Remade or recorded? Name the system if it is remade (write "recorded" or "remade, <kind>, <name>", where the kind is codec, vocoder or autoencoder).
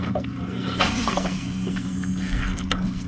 remade, codec, SNAC